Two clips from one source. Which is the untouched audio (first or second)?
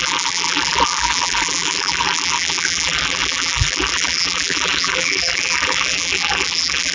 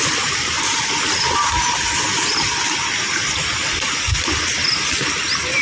second